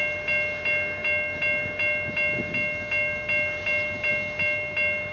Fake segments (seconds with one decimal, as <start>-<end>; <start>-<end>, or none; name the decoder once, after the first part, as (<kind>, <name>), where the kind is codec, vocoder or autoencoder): none